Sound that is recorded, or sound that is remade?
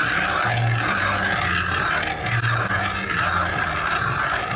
recorded